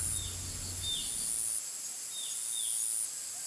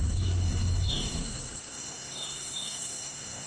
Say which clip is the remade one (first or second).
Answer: second